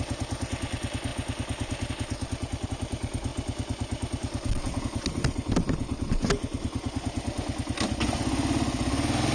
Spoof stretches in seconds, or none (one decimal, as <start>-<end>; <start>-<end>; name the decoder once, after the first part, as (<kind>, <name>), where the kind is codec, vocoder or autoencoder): none